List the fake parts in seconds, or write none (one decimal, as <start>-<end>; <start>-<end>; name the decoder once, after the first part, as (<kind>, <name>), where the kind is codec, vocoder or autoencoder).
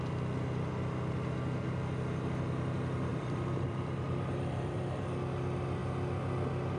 3.1-5.1 (vocoder, BigVGAN v2)